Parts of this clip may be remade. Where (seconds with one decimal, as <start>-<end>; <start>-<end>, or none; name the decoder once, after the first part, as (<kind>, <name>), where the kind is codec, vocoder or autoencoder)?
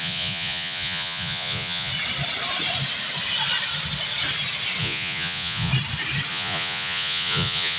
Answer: 0.0-1.9 (vocoder, Vocos); 4.8-5.7; 6.3-7.8